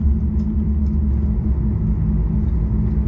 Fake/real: real